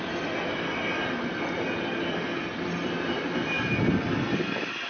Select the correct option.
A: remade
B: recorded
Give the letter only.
B